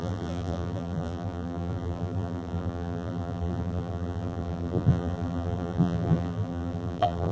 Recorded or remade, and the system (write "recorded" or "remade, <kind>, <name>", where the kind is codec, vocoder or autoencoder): remade, vocoder, BigVGAN v2